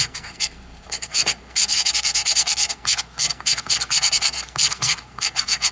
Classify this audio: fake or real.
fake